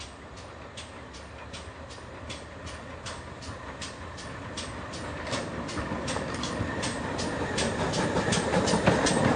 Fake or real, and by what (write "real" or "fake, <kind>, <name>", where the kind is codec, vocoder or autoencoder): real